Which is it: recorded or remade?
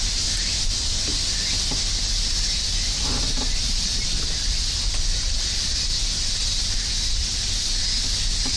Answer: recorded